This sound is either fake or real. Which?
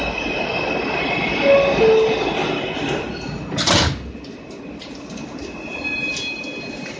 real